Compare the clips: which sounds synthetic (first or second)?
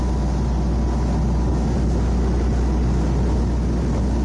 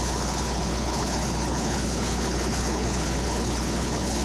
second